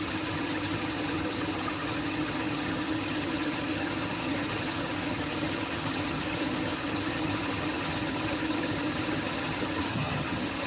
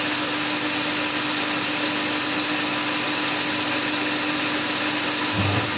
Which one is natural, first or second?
second